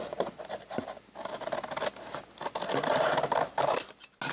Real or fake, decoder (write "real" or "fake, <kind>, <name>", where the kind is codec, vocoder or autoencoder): real